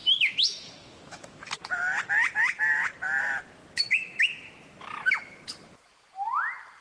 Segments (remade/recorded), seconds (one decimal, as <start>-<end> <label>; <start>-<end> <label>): 0.0-1.6 remade; 1.6-3.6 recorded; 3.6-5.9 remade; 5.9-6.8 recorded